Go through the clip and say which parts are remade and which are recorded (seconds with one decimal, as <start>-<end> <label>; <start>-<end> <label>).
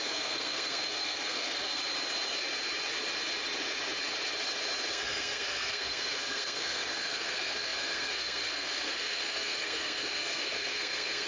0.0-1.8 remade; 1.8-4.9 recorded; 4.9-11.3 remade